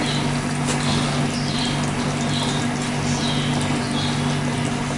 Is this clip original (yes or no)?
yes